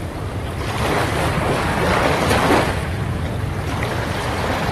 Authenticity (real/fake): real